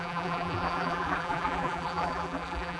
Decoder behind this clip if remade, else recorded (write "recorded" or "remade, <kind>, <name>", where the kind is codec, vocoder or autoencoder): remade, vocoder, BigVGAN v2